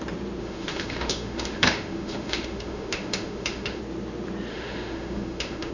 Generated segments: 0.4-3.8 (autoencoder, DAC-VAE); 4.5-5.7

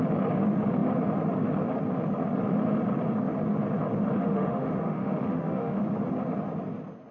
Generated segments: 4.2-5.8 (autoencoder, DAC-VAE)

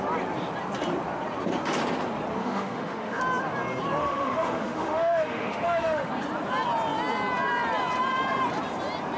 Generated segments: 2.4-3.2 (autoencoder, DAC-VAE); 4.0-6.1